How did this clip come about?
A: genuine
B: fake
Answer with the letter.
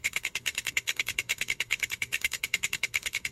B